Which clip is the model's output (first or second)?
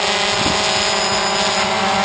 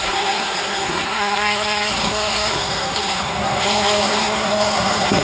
second